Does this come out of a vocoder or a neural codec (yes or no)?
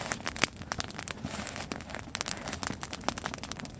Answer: no